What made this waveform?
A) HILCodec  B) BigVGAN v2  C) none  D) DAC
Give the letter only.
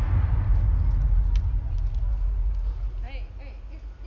C